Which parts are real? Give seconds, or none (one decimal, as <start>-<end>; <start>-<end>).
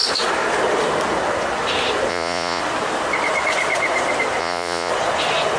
0.0-2.1; 2.6-4.4; 4.9-5.6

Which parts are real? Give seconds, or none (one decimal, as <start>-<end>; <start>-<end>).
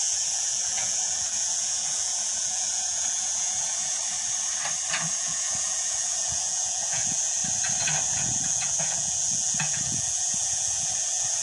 4.0-4.9; 7.4-8.1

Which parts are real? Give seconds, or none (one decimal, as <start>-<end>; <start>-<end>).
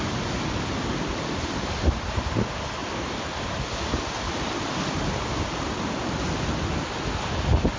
0.0-7.8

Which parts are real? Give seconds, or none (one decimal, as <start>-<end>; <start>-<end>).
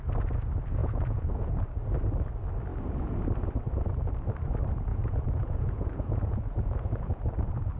0.0-0.8; 1.5-4.9; 7.2-7.8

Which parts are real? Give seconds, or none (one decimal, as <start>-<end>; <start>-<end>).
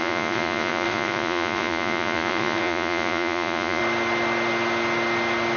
3.8-5.6